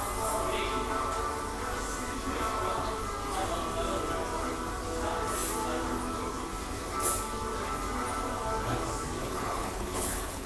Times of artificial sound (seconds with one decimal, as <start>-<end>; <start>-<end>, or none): 9.2-10.5